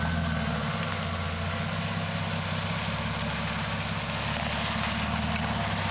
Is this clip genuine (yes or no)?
yes